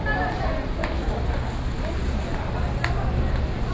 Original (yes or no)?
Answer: yes